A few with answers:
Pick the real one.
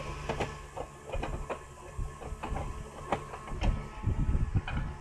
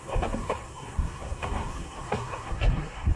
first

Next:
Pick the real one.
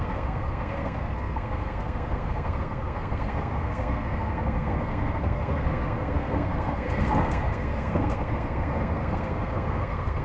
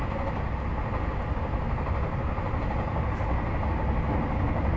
second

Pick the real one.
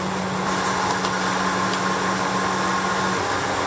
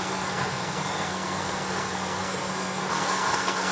first